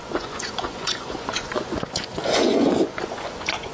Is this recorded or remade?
remade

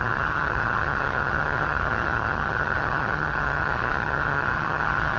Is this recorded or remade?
remade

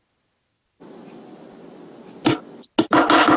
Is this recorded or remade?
recorded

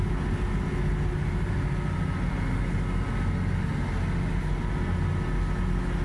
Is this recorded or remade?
recorded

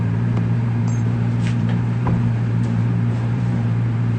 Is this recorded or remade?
remade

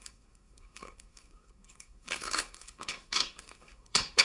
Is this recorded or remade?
remade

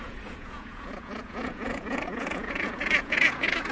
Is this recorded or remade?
remade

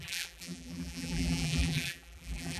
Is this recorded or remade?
remade